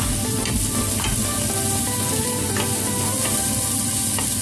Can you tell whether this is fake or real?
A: real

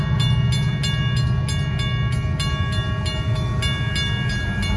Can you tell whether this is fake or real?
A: real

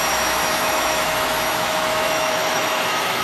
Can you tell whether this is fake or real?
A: fake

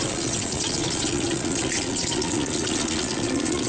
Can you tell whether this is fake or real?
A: fake